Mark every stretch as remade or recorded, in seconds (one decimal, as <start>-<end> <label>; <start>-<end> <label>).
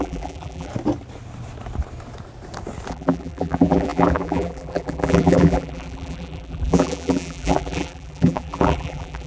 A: 0.0-0.7 remade; 0.7-2.9 recorded; 2.9-9.3 remade